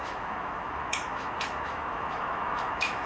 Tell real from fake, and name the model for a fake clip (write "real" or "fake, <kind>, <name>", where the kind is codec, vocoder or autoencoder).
fake, autoencoder, DAC-VAE